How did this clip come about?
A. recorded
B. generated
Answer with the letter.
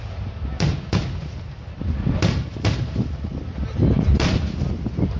B